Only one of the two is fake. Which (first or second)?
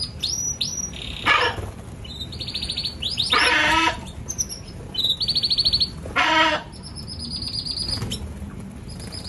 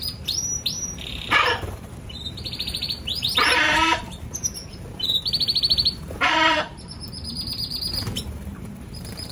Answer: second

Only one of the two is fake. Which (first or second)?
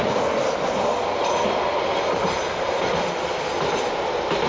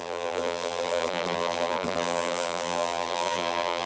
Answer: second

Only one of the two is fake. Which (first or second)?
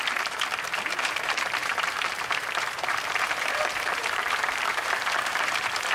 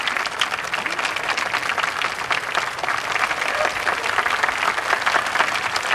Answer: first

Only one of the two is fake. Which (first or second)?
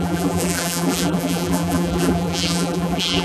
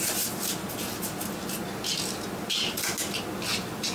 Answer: first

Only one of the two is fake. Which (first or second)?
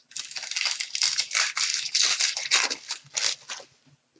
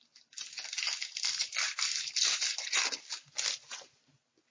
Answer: second